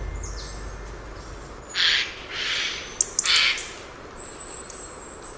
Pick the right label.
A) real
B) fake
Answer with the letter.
A